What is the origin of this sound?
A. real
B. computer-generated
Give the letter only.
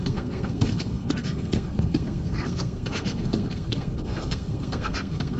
B